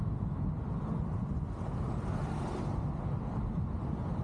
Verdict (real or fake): real